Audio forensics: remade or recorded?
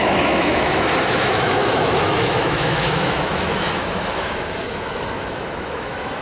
remade